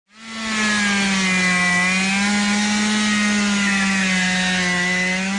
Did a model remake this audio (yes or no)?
no